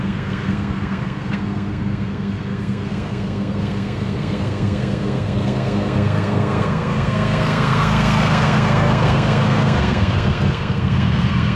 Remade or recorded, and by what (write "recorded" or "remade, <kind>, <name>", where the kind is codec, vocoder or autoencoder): remade, codec, SNAC